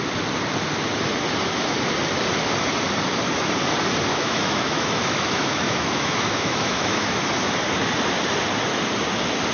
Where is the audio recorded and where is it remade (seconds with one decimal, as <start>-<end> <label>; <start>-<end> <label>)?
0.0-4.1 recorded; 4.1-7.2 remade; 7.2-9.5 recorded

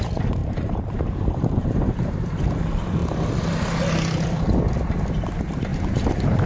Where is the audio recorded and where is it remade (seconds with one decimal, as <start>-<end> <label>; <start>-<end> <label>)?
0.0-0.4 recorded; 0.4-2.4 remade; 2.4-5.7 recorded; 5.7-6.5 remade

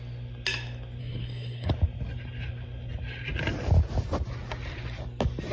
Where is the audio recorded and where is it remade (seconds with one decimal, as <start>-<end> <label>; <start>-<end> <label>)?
0.0-1.0 recorded; 1.0-1.7 remade; 1.7-5.5 recorded

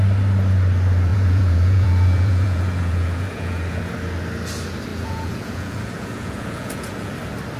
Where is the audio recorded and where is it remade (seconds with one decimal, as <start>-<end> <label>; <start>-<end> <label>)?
0.0-1.1 recorded; 1.1-3.8 remade; 3.8-4.9 recorded; 4.9-7.1 remade; 7.1-7.6 recorded

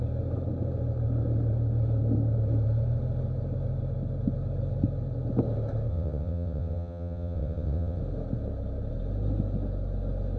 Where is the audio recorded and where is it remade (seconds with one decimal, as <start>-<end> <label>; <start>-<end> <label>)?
0.0-5.9 recorded; 5.9-8.0 remade; 8.0-10.4 recorded